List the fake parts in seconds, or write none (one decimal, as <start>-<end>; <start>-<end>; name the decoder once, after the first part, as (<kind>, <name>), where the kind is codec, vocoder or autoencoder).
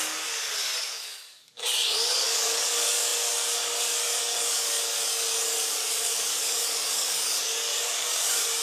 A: 0.0-8.6 (codec, DAC)